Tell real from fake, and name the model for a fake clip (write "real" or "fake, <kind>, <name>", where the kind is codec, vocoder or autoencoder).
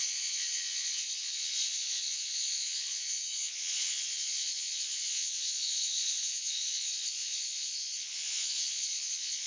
fake, vocoder, Vocos